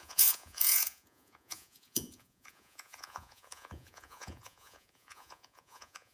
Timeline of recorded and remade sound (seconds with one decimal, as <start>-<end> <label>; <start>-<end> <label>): 0.0-6.1 remade

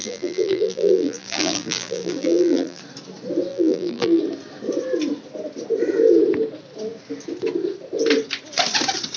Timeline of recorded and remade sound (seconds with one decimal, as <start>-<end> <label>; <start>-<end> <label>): 0.0-2.8 remade; 2.8-3.5 recorded; 3.5-4.2 remade; 4.2-9.2 recorded

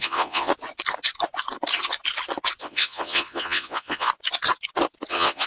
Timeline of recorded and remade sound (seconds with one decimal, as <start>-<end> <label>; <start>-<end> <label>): 0.0-0.5 remade; 0.5-2.6 recorded; 2.6-4.1 remade; 4.1-5.1 recorded; 5.1-5.5 remade